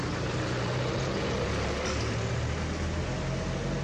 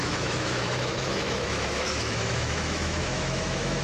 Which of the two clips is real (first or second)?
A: first